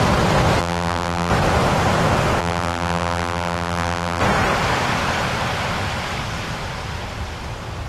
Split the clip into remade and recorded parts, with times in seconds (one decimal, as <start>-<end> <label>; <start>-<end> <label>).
0.0-0.6 recorded; 0.6-1.3 remade; 1.3-2.4 recorded; 2.4-4.2 remade; 4.2-7.9 recorded